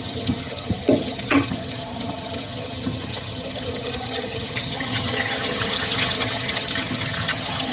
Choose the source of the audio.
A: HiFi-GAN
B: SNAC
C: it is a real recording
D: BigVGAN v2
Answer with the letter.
A